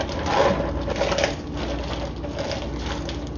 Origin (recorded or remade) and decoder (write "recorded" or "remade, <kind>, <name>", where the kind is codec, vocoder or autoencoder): recorded